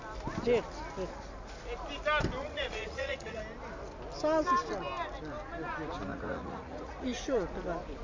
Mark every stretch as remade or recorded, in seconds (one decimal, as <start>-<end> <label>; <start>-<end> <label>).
0.0-2.4 recorded; 2.4-3.4 remade; 3.4-6.1 recorded; 6.1-7.5 remade; 7.5-8.0 recorded